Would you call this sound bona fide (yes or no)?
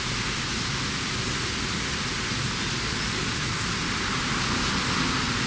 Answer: yes